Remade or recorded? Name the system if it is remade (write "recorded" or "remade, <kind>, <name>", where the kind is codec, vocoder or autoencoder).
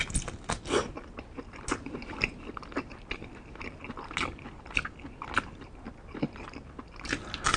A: recorded